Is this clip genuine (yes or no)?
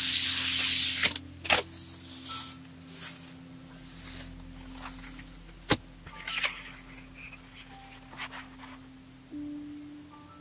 yes